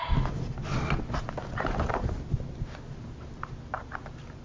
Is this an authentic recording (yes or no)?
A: yes